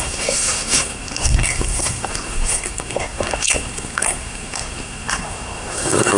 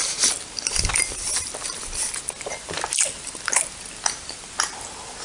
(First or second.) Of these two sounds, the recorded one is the second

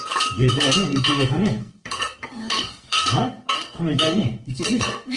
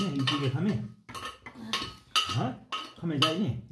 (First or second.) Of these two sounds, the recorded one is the second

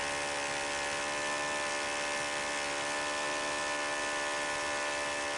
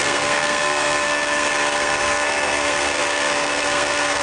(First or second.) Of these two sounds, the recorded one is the first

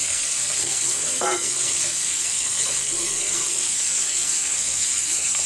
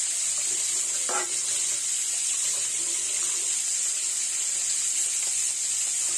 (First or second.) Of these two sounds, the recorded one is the second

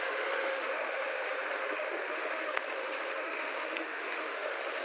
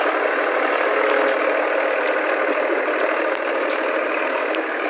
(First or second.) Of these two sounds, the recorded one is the second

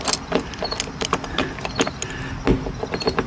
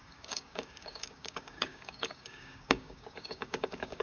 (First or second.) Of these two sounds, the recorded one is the first